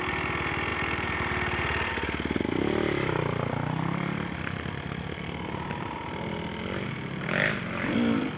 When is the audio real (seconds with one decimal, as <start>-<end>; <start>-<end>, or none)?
0.0-8.4